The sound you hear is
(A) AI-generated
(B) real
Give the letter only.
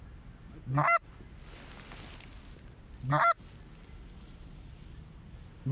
B